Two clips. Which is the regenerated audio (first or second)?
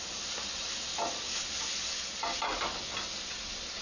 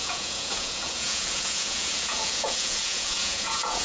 second